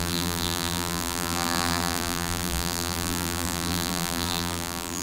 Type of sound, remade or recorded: remade